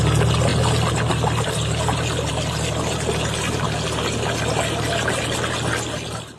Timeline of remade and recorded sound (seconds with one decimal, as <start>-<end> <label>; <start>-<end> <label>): 0.0-6.4 recorded